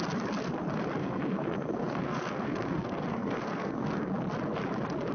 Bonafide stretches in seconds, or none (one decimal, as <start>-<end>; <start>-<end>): 0.0-1.0; 4.1-5.1

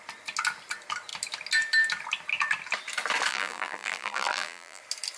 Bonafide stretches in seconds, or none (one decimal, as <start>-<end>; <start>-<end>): 0.0-3.3; 4.8-5.2

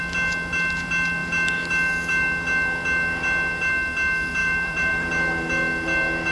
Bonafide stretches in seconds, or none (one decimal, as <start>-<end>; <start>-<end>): 0.0-4.4; 5.1-6.3

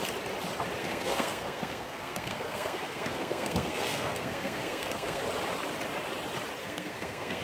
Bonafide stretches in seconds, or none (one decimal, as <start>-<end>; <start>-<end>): 0.0-0.8; 5.2-6.6

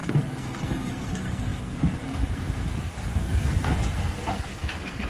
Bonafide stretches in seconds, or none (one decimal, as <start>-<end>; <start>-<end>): none

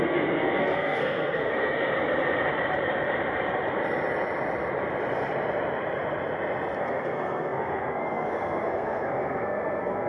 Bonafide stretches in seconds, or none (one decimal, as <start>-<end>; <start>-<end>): 1.9-6.8

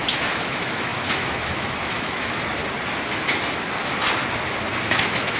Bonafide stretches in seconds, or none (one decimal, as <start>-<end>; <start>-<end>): 2.6-4.7

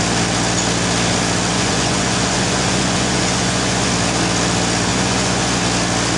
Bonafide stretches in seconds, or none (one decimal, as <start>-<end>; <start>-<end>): 0.0-1.5; 3.9-4.9; 5.6-6.2